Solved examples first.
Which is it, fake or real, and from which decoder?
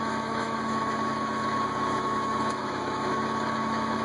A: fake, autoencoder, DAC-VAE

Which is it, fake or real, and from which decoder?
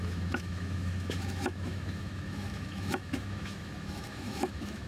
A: fake, autoencoder, DAC-VAE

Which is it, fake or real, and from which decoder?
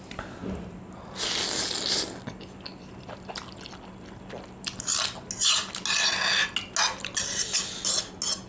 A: real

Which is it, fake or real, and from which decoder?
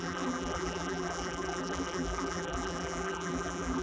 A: fake, vocoder, BigVGAN v2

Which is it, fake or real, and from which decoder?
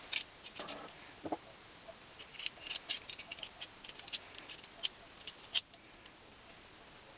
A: real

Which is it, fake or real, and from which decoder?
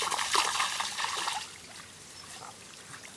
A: fake, vocoder, BigVGAN v2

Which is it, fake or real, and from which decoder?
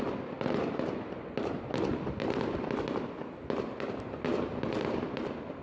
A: real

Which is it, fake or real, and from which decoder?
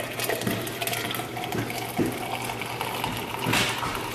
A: real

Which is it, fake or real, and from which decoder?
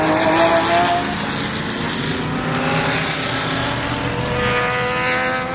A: real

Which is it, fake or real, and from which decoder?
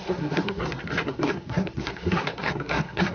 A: fake, codec, SNAC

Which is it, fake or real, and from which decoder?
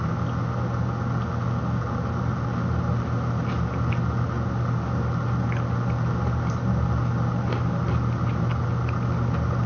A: real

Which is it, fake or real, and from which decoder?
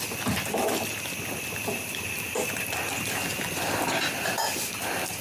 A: real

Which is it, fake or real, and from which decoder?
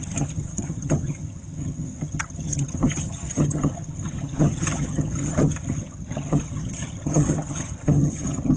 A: fake, vocoder, HiFi-GAN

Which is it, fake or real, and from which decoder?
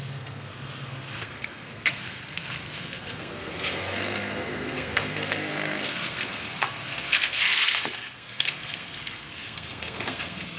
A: fake, codec, SNAC